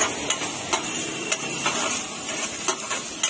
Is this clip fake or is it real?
real